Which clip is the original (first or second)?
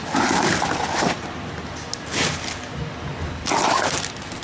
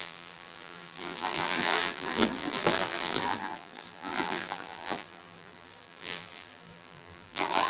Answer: first